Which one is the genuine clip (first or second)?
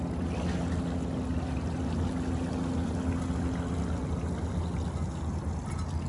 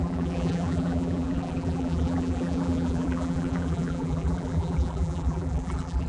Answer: first